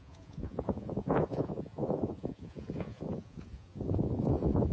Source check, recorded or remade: remade